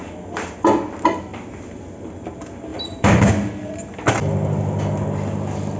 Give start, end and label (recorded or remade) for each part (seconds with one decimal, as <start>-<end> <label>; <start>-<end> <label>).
0.0-2.7 recorded; 2.7-3.3 remade; 3.3-5.8 recorded